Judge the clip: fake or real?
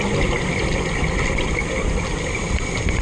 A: real